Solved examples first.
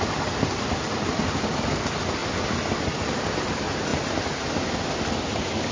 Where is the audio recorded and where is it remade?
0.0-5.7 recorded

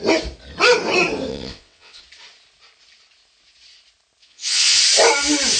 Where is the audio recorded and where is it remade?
0.0-1.3 recorded; 1.3-2.0 remade; 2.0-4.2 recorded; 4.2-4.8 remade; 4.8-5.6 recorded

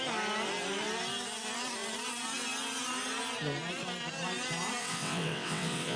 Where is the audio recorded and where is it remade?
0.0-4.8 recorded; 4.8-6.0 remade

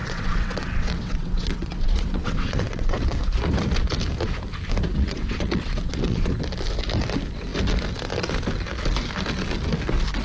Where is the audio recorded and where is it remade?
0.0-3.2 remade; 3.2-4.9 recorded; 4.9-6.3 remade; 6.3-10.2 recorded

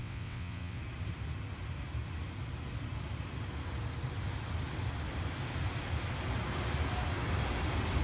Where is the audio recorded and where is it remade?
0.0-0.8 remade; 0.8-8.0 recorded